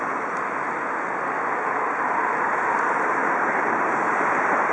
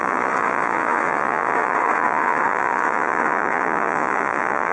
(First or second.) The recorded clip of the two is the first